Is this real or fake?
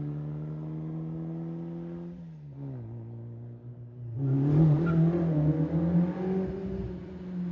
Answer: real